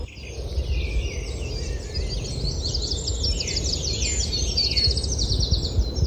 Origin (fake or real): real